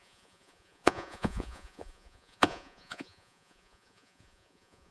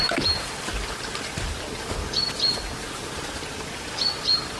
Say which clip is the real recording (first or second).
second